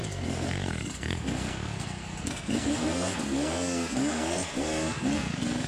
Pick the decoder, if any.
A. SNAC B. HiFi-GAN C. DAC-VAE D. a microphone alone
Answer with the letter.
A